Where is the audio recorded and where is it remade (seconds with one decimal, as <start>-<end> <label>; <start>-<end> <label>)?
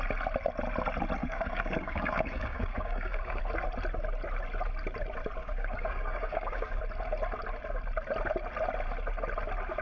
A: 0.0-1.2 recorded; 1.2-3.4 remade; 3.4-5.4 recorded; 5.4-6.8 remade; 6.8-9.8 recorded